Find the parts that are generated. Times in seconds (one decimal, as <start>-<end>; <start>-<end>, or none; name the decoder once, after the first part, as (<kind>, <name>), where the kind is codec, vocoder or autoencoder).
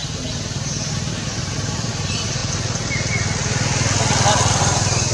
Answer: 0.0-2.4 (vocoder, BigVGAN v2); 4.6-5.1